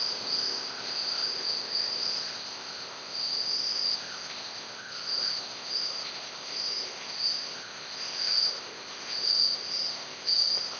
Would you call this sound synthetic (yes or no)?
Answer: yes